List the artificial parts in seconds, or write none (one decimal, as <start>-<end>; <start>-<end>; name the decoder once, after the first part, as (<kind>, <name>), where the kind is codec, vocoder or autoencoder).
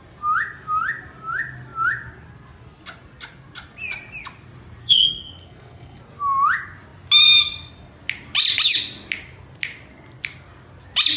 4.8-6.0 (codec, SNAC)